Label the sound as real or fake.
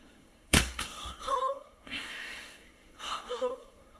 fake